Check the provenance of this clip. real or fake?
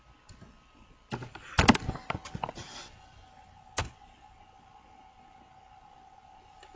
real